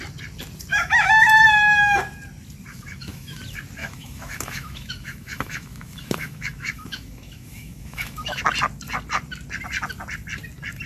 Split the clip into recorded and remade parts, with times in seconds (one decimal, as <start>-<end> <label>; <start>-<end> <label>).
0.0-0.7 recorded; 0.7-2.0 remade; 2.0-2.7 recorded; 2.7-3.4 remade; 3.4-3.8 recorded; 3.8-8.4 remade; 8.4-10.9 recorded